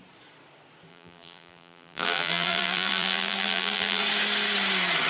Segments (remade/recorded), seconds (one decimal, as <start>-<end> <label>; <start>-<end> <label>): 0.0-0.9 recorded; 0.9-4.0 remade; 4.0-5.1 recorded